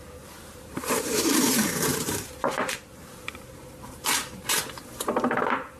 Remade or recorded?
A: remade